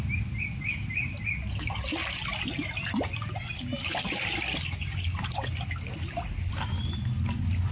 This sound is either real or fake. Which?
real